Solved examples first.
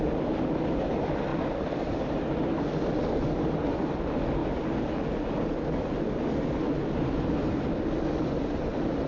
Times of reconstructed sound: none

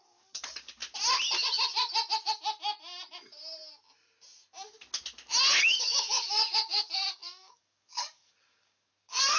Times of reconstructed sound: 0.0-0.8; 5.6-9.4

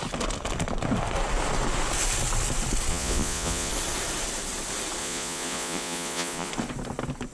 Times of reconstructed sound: 2.9-3.7; 5.0-6.5

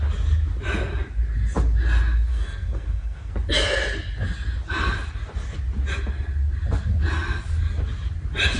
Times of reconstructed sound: 2.3-3.3

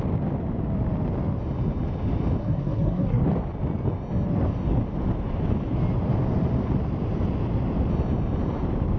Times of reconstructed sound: 2.4-3.2

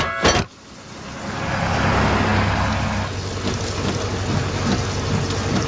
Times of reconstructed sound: none

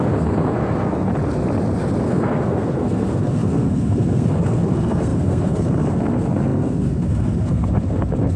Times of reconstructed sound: 0.0-1.1; 2.0-8.4

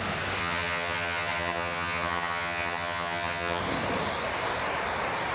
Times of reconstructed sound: 0.4-3.6